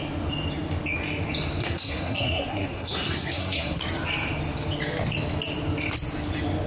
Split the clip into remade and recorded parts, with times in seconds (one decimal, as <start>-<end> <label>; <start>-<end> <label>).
0.0-1.6 recorded; 1.6-3.8 remade; 3.8-6.7 recorded